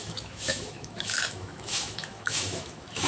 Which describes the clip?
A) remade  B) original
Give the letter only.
A